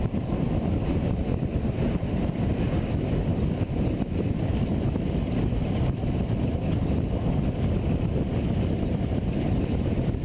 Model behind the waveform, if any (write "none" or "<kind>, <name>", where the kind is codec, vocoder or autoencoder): none